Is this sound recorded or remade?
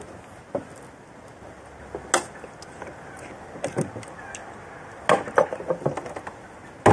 recorded